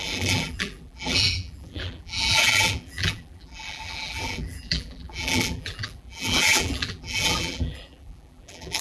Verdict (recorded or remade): remade